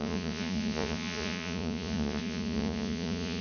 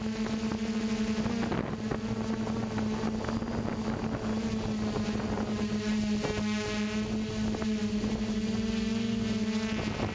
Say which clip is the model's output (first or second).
first